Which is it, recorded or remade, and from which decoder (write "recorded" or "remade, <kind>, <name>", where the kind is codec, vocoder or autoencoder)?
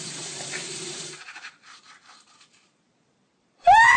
remade, vocoder, BigVGAN v2